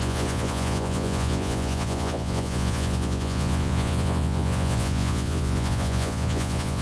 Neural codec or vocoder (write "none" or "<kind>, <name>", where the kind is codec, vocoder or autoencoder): vocoder, Vocos